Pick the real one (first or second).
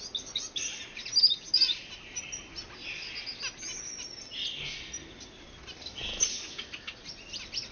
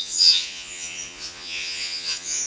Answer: first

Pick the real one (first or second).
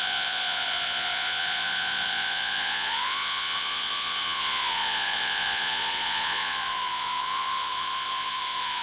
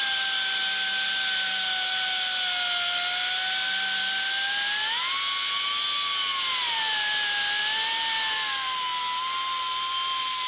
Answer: second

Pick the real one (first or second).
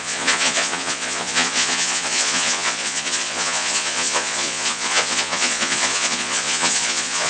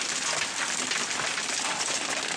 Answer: second